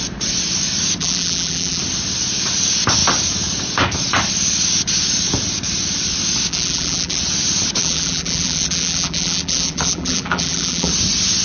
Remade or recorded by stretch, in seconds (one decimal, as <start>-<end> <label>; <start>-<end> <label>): 0.0-1.0 recorded; 1.0-1.8 remade; 1.8-6.5 recorded; 6.5-7.2 remade; 7.2-7.8 recorded; 7.8-10.9 remade; 10.9-11.4 recorded